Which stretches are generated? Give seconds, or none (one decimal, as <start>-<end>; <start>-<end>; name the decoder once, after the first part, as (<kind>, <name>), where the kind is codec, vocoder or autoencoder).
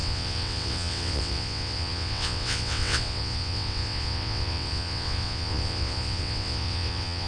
0.0-7.3 (vocoder, WaveNeXt)